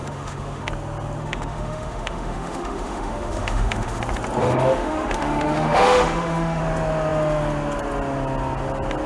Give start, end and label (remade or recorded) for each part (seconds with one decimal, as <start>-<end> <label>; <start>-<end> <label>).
0.0-0.7 remade; 0.7-1.2 recorded; 1.2-4.0 remade; 4.0-4.4 recorded; 4.4-6.6 remade; 6.6-9.1 recorded